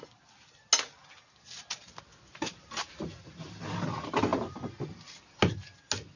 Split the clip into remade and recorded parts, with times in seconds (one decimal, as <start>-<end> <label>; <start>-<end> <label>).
0.0-6.2 recorded